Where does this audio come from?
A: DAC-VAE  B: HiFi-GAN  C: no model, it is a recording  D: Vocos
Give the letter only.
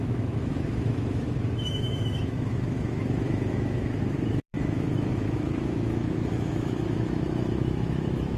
A